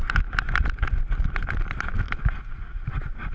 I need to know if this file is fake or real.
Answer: real